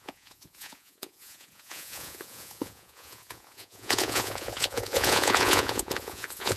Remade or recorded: remade